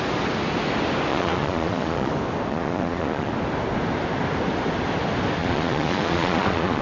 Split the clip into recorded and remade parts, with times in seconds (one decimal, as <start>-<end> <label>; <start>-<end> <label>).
0.0-1.1 recorded; 1.1-2.1 remade; 2.1-2.5 recorded; 2.5-3.3 remade; 3.3-5.4 recorded; 5.4-6.8 remade